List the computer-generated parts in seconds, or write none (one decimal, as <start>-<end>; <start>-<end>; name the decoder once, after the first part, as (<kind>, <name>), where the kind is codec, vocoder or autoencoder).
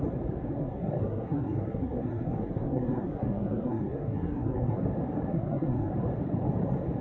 0.6-4.8 (codec, SNAC); 5.3-5.9